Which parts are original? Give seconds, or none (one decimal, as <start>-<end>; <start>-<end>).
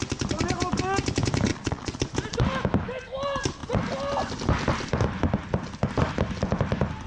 0.0-1.5; 2.0-7.1